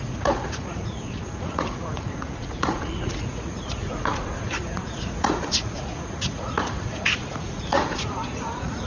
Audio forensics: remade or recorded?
remade